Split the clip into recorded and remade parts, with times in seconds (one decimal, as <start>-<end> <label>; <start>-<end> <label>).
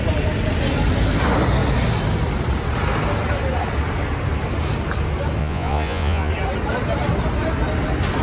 0.0-5.4 recorded; 5.4-6.3 remade; 6.3-8.2 recorded